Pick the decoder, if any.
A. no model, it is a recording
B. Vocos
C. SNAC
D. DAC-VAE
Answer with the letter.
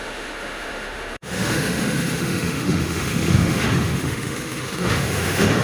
D